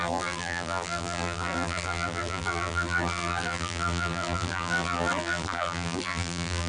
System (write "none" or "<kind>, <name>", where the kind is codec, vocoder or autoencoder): vocoder, BigVGAN v2